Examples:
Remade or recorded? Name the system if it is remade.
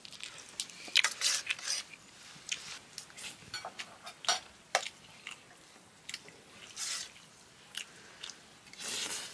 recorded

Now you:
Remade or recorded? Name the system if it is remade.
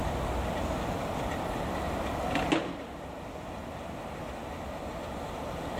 recorded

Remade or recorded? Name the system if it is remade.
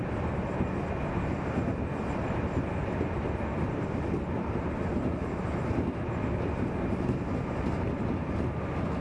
recorded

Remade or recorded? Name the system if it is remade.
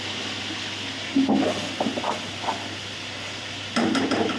recorded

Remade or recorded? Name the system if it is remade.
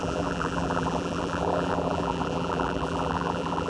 remade, vocoder, BigVGAN v2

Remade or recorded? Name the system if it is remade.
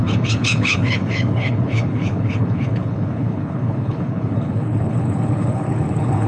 remade, codec, HILCodec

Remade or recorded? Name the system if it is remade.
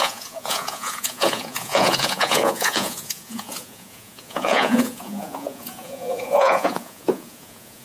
remade, vocoder, Vocos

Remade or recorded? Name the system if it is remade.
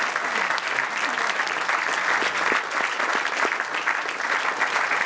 recorded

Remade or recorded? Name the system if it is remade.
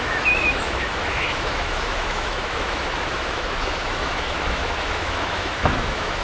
remade, autoencoder, DAC-VAE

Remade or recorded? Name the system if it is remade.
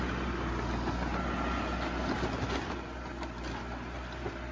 recorded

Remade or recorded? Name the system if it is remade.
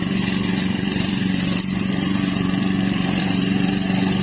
remade, vocoder, BigVGAN v2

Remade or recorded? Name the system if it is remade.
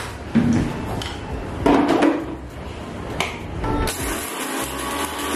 recorded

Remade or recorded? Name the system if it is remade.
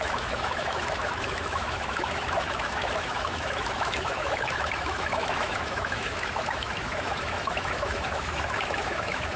remade, autoencoder, DAC-VAE